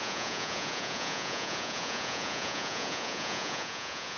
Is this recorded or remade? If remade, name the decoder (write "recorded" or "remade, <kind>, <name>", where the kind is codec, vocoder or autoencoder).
remade, vocoder, Vocos